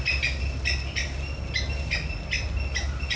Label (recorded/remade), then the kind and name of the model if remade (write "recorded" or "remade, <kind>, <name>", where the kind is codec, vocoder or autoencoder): recorded